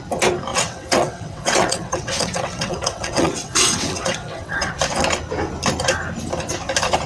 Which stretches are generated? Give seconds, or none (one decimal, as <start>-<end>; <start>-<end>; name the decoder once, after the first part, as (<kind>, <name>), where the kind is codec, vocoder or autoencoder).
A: 0.5-4.7 (vocoder, WaveNeXt)